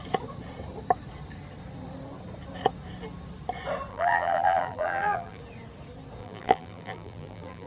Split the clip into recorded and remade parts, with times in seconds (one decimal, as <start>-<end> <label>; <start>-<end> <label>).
0.0-3.9 recorded; 3.9-5.4 remade; 5.4-6.2 recorded; 6.2-7.7 remade